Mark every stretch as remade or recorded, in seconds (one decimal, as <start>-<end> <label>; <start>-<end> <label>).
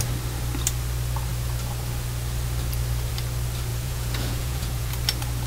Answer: 0.0-3.7 recorded; 3.7-4.9 remade; 4.9-5.5 recorded